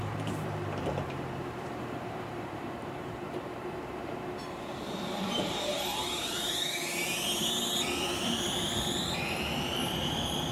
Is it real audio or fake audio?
fake